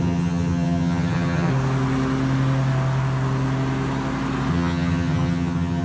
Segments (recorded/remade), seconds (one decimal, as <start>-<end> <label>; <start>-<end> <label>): 0.0-1.5 remade; 1.5-4.5 recorded; 4.5-5.8 remade

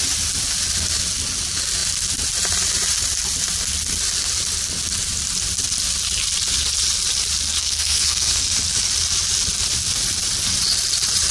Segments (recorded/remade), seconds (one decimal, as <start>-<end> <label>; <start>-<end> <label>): 0.0-7.6 recorded; 7.6-8.4 remade; 8.4-11.3 recorded

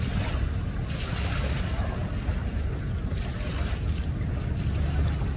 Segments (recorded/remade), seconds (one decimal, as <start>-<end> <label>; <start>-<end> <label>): 0.0-5.4 recorded

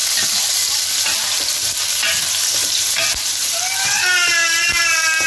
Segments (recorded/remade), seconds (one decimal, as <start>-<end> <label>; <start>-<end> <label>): 0.0-2.6 recorded; 2.6-4.0 remade; 4.0-5.3 recorded

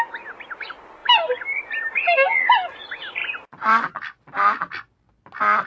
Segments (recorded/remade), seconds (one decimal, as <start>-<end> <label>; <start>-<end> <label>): 0.0-5.7 recorded

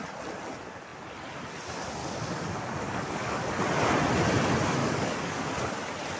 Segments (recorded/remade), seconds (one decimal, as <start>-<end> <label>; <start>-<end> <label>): 0.0-2.0 recorded; 2.0-3.6 remade; 3.6-4.8 recorded; 4.8-5.5 remade; 5.5-6.2 recorded

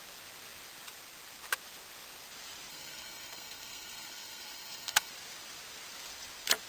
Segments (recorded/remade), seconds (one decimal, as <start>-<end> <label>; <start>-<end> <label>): 0.0-2.7 recorded; 2.7-5.1 remade; 5.1-6.7 recorded

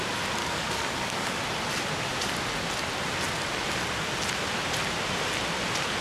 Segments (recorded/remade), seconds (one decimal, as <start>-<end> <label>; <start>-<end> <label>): 0.0-0.4 recorded; 0.4-1.4 remade; 1.4-6.0 recorded